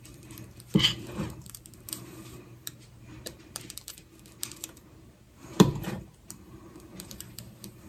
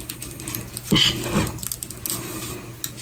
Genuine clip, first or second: second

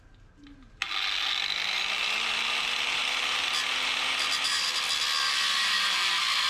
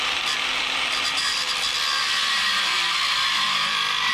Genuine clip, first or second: first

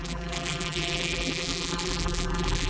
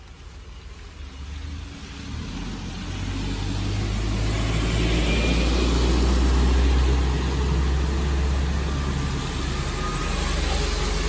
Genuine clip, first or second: second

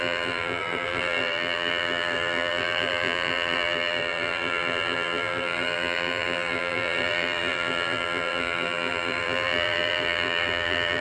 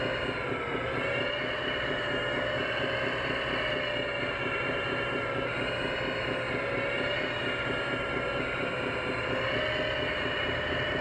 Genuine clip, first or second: second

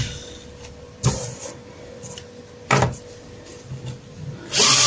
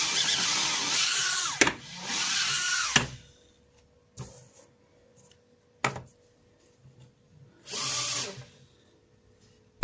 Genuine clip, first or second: second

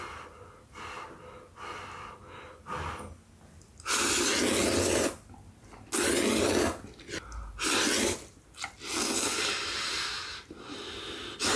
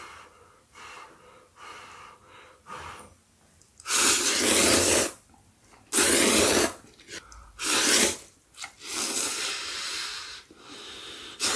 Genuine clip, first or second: first